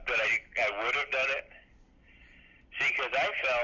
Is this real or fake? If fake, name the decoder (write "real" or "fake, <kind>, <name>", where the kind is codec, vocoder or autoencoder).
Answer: real